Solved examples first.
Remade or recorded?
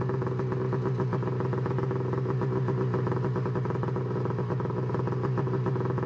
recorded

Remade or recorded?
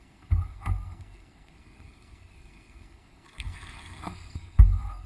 remade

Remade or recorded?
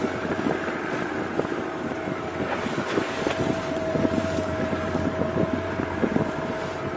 remade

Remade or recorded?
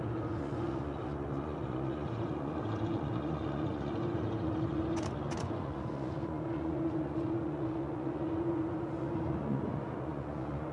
remade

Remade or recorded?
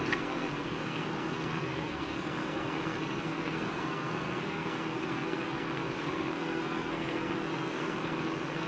remade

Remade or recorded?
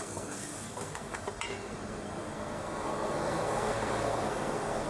remade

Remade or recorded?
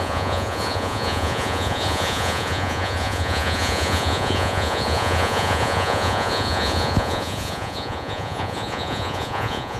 remade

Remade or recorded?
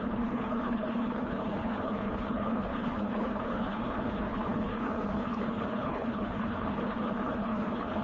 remade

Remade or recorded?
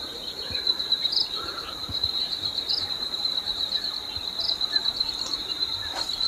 remade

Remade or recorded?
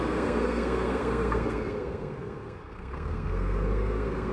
remade